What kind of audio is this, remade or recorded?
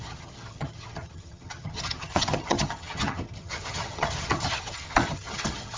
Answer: remade